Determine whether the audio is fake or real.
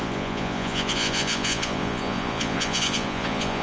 fake